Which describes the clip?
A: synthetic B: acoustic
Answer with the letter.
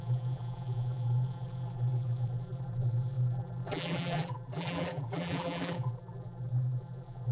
A